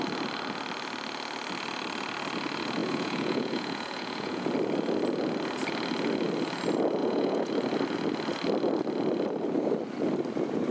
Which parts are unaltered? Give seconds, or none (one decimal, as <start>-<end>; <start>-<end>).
0.0-2.8; 4.5-7.0; 7.5-10.7